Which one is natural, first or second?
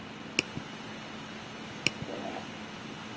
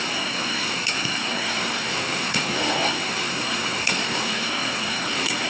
first